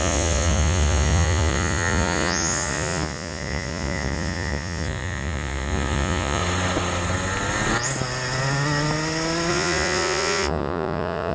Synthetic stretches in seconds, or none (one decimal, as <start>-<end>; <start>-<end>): 0.0-6.4; 9.5-11.3